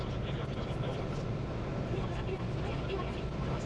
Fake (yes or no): no